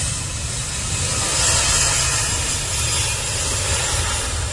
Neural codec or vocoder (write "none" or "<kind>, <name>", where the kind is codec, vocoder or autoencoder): none